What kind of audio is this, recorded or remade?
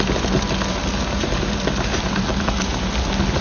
recorded